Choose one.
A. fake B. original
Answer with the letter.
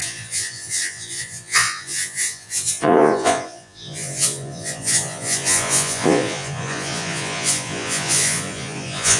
A